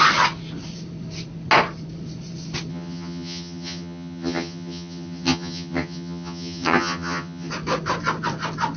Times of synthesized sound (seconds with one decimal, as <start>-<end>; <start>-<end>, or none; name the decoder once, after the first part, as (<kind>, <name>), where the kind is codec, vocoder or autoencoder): 2.7-7.5 (vocoder, HiFi-GAN)